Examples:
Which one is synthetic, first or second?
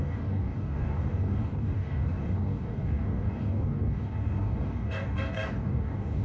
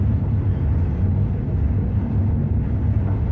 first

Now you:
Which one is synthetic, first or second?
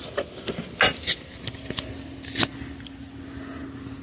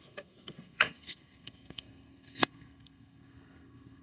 second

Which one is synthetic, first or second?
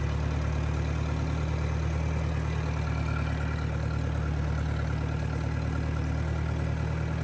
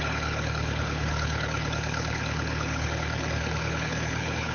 second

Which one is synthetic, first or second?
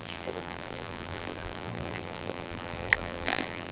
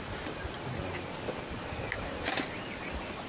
first